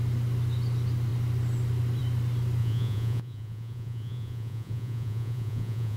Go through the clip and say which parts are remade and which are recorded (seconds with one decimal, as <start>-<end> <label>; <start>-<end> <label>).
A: 0.0-2.6 recorded; 2.6-6.0 remade

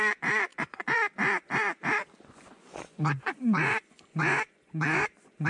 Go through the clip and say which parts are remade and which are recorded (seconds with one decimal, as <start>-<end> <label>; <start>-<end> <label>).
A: 0.0-5.5 remade

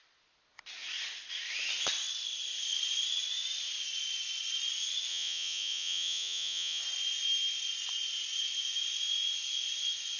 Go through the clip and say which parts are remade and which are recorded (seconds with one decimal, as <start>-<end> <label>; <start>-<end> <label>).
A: 0.0-5.1 recorded; 5.1-6.8 remade; 6.8-10.2 recorded

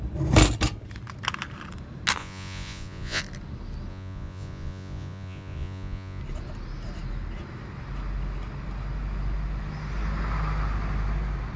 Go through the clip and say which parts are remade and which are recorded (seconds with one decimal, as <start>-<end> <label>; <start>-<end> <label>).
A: 0.0-2.2 recorded; 2.2-3.2 remade; 3.2-3.9 recorded; 3.9-6.2 remade; 6.2-11.6 recorded

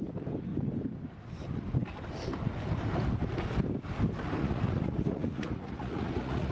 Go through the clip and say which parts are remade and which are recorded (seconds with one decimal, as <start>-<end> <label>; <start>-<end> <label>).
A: 0.0-4.4 recorded; 4.4-6.5 remade

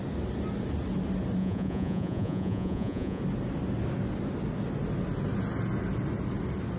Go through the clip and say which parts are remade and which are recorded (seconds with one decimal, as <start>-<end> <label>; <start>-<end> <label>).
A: 0.0-1.4 recorded; 1.4-3.2 remade; 3.2-6.8 recorded

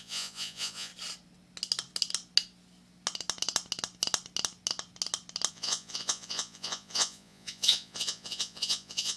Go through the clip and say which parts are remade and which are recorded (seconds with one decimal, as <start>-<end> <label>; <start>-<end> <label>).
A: 0.0-0.9 remade; 0.9-5.5 recorded; 5.5-9.2 remade